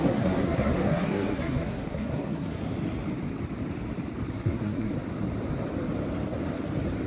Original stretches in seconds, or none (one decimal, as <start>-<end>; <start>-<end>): 2.6-4.3; 4.9-7.1